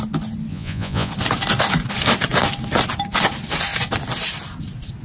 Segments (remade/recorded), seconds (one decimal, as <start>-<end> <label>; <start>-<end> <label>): 0.0-0.5 recorded; 0.5-1.1 remade; 1.1-5.0 recorded